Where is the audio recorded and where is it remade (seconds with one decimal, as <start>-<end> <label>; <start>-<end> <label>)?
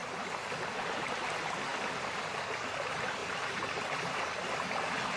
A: 0.0-0.7 remade; 0.7-3.2 recorded; 3.2-4.2 remade; 4.2-5.2 recorded